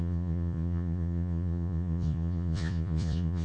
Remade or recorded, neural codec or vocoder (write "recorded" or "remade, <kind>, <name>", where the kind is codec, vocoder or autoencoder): remade, vocoder, Vocos